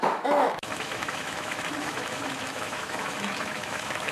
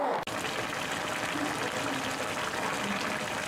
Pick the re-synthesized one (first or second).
first